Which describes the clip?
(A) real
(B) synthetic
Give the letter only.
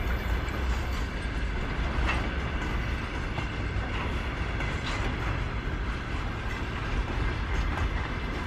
A